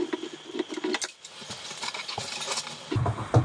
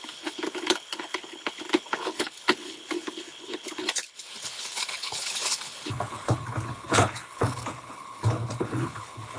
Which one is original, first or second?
first